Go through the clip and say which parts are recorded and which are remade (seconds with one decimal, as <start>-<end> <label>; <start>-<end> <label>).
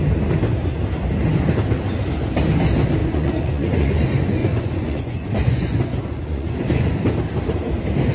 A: 0.0-3.0 recorded; 3.0-3.9 remade; 3.9-4.4 recorded; 4.4-6.9 remade; 6.9-8.1 recorded